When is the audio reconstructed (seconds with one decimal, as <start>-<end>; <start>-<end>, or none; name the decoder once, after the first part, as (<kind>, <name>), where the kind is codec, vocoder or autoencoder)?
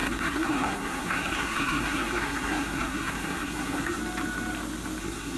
0.0-4.0 (codec, SNAC); 5.0-5.4